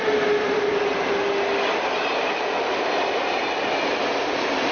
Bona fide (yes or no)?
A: yes